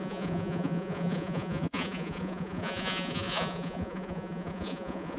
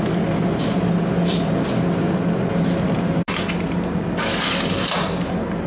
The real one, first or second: second